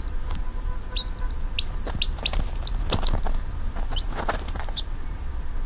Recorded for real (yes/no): yes